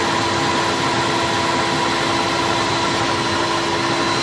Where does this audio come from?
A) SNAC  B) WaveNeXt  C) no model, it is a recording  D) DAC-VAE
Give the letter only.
C